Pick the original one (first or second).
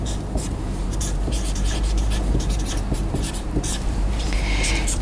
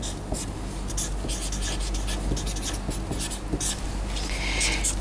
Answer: second